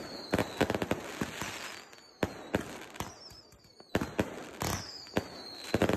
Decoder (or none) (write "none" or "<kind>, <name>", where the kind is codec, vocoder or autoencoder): none